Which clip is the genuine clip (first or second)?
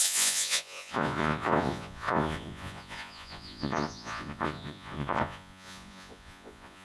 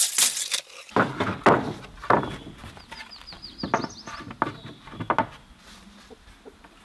second